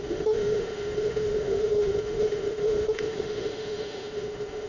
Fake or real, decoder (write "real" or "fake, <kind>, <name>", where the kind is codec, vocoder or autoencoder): fake, autoencoder, DAC-VAE